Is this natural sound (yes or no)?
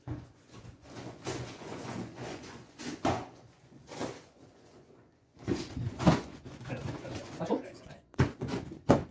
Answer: no